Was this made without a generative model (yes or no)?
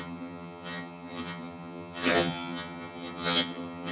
no